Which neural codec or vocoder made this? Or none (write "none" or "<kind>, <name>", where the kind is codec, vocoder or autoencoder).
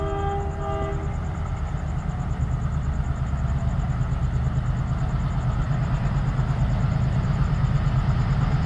none